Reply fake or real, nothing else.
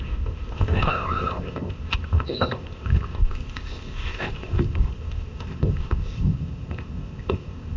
fake